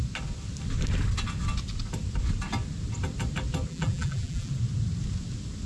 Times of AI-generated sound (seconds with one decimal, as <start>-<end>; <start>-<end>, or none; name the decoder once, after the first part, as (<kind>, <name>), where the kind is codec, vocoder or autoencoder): 3.7-4.5 (vocoder, BigVGAN v2)

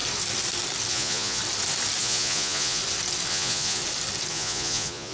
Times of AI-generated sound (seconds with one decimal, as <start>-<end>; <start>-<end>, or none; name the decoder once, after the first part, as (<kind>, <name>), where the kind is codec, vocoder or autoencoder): 0.9-1.4 (vocoder, Vocos); 2.0-2.8; 3.3-3.8; 4.3-5.1

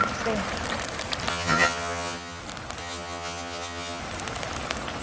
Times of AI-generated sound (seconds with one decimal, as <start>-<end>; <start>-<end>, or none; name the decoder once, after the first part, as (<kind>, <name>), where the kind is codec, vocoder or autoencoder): 1.3-2.4 (vocoder, HiFi-GAN); 2.8-4.0

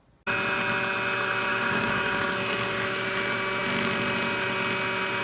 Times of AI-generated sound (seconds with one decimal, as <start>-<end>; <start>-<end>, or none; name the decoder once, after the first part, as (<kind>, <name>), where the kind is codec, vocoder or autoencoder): 1.5-2.2 (codec, DAC)

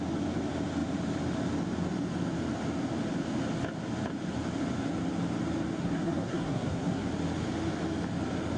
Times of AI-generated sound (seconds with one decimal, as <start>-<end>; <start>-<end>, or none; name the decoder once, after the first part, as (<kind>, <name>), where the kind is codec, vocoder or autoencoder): 5.8-7.1 (codec, SNAC)

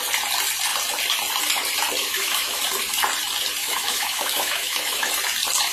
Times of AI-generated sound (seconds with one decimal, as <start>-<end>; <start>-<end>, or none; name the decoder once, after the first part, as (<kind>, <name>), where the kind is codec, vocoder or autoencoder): 2.0-2.6 (autoencoder, DAC-VAE); 3.6-5.1

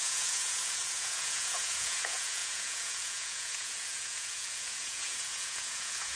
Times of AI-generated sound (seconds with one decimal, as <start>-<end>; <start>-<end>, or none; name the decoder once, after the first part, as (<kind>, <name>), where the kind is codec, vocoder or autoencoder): 0.0-6.2 (vocoder, Vocos)